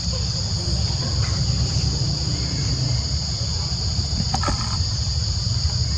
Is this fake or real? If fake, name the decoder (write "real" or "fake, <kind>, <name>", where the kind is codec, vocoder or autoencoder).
real